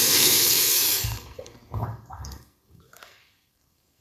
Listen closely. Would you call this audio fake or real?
fake